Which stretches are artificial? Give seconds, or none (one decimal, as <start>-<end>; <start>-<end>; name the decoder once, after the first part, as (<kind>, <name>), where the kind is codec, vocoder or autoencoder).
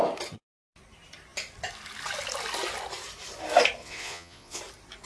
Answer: 3.8-4.6 (vocoder, Vocos)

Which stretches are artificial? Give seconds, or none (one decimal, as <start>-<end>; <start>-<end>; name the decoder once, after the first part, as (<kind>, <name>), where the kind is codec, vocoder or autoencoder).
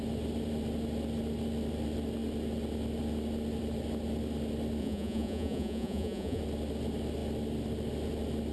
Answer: 4.8-6.4 (vocoder, Vocos)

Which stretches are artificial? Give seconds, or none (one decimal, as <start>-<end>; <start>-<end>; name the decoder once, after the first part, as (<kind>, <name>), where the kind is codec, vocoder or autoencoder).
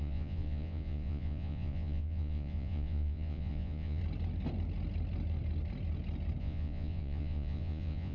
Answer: 0.0-4.0 (vocoder, Vocos); 6.4-8.1